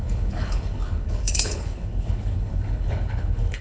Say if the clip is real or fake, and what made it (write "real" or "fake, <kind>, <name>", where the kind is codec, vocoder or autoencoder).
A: fake, codec, HILCodec